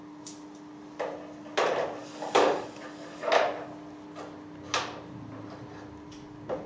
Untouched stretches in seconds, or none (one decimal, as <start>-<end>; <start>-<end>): 0.0-2.0; 3.3-6.7